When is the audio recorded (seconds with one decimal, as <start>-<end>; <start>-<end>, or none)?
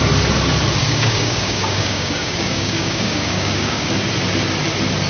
0.0-0.8; 3.9-5.1